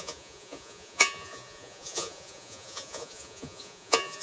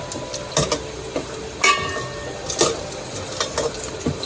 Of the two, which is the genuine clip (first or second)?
second